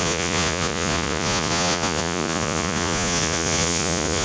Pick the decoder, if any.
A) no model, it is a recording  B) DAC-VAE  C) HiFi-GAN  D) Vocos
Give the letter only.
D